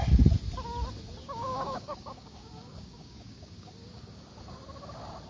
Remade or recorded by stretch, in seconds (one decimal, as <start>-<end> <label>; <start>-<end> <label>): 0.0-1.2 recorded; 1.2-4.3 remade; 4.3-5.3 recorded

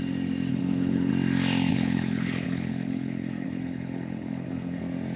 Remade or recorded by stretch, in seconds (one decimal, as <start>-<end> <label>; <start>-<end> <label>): 0.0-0.5 recorded; 0.5-1.1 remade; 1.1-1.7 recorded; 1.7-4.8 remade; 4.8-5.2 recorded

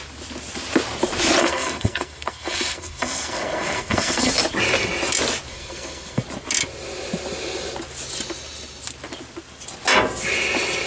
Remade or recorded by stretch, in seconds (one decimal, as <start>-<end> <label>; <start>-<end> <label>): 0.0-1.4 recorded; 1.4-4.3 remade; 4.3-5.5 recorded; 5.5-6.2 remade; 6.2-10.9 recorded

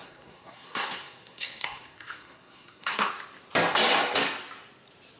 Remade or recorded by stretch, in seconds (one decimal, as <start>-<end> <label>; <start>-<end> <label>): 0.0-3.1 remade; 3.1-5.2 recorded

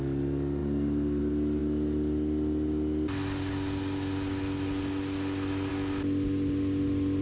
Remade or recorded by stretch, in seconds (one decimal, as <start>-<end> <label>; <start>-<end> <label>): 0.0-7.2 recorded

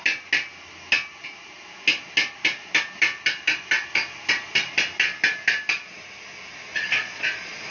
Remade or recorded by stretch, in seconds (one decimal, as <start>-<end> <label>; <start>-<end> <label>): 0.0-6.7 recorded; 6.7-7.7 remade

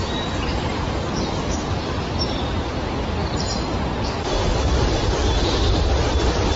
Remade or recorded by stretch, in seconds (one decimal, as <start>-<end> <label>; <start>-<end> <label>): 0.0-6.6 recorded

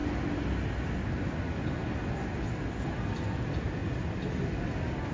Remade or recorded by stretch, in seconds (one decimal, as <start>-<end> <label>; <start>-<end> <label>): 0.0-5.1 recorded